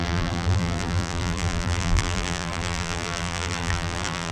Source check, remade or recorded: remade